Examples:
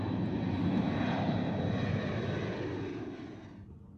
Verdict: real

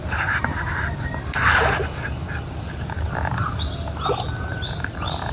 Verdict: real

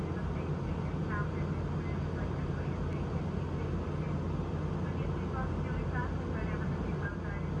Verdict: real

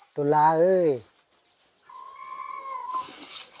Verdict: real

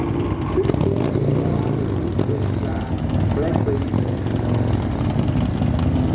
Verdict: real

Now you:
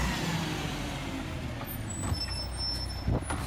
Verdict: real